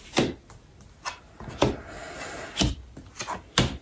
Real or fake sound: real